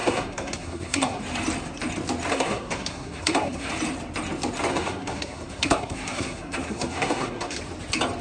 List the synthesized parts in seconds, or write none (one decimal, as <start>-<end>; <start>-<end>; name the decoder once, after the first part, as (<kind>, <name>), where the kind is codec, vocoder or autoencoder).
0.0-1.2 (codec, SNAC); 2.3-3.7; 4.7-7.6

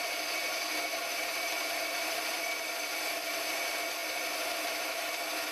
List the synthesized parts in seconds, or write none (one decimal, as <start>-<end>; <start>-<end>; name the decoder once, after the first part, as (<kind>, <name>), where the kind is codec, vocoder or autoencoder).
1.6-3.5 (vocoder, BigVGAN v2)

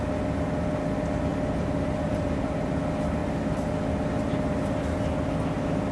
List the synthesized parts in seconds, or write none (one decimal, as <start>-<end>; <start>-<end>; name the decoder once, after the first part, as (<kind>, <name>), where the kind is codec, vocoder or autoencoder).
1.3-2.8 (vocoder, BigVGAN v2); 3.2-3.7

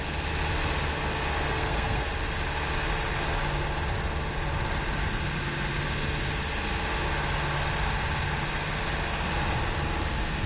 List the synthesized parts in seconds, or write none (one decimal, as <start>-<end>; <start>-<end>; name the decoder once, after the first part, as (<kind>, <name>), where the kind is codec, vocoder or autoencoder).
1.5-2.1 (codec, SNAC)

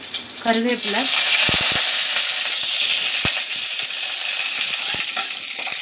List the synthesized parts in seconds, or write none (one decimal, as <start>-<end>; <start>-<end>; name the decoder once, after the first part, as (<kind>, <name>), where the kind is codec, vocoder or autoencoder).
none